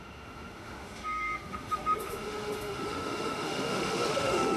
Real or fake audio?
fake